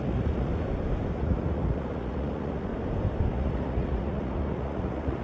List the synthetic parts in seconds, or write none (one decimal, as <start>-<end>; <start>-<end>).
0.0-0.5; 1.1-2.7; 3.3-5.2